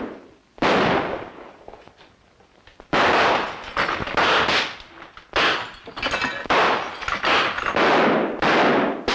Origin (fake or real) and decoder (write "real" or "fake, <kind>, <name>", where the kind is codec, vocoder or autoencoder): real